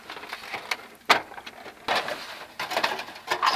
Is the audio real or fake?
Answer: real